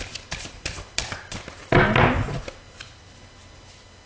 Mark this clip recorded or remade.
recorded